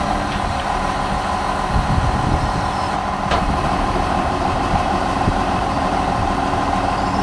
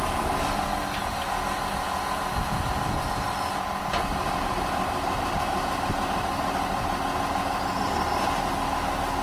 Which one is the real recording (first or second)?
second